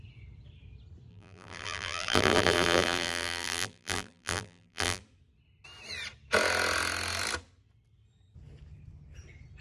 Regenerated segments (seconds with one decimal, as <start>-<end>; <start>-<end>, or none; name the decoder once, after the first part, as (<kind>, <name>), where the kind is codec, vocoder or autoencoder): 1.1-5.0 (vocoder, BigVGAN v2)